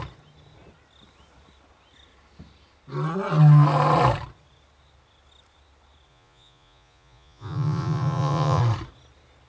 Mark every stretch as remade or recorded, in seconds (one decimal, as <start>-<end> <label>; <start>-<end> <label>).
0.0-6.1 recorded; 6.1-8.6 remade; 8.6-9.5 recorded